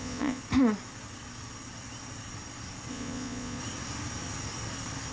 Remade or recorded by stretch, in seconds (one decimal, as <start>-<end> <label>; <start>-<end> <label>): 0.0-0.4 remade; 0.4-2.9 recorded; 2.9-3.6 remade; 3.6-5.1 recorded